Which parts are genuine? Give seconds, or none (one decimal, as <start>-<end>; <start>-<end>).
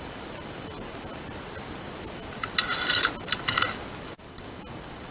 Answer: 0.0-5.1